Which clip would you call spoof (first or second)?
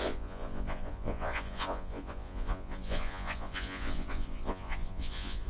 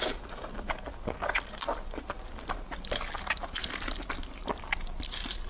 first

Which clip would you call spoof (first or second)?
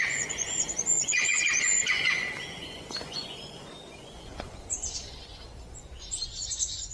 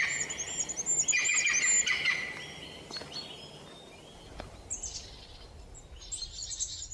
first